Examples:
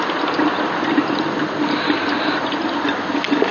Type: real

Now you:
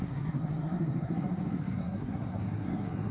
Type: fake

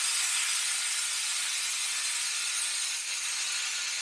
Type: real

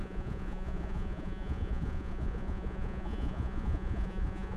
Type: fake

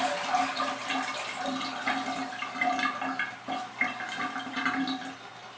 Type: real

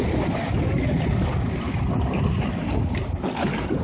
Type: real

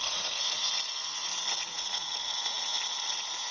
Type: fake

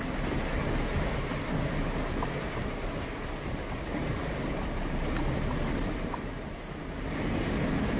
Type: real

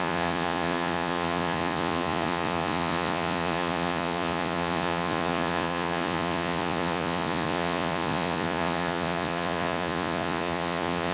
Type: fake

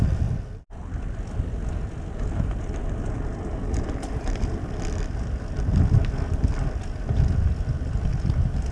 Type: real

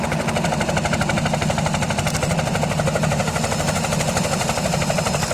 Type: real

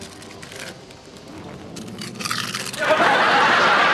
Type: fake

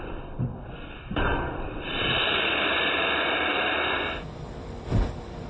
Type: fake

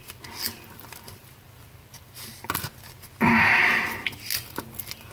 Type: real